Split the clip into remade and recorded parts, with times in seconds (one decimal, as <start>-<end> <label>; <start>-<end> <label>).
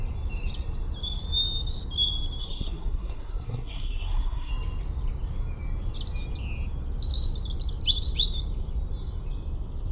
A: 0.0-2.4 recorded; 2.4-4.5 remade; 4.5-9.9 recorded